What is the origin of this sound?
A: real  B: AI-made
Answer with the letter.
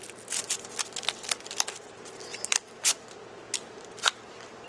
A